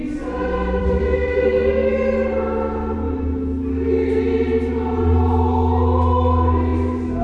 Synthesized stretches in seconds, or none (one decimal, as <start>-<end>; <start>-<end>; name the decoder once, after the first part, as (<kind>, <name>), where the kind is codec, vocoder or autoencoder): 0.8-1.9 (codec, SNAC); 3.7-4.2